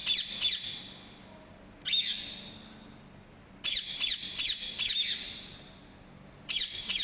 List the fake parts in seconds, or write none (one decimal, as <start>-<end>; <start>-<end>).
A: none